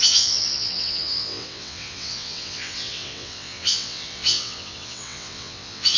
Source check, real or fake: fake